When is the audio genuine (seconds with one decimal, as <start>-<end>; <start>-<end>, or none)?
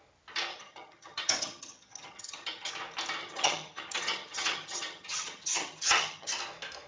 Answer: 0.0-0.5; 2.7-3.2; 6.3-6.9